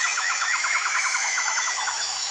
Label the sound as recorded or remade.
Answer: remade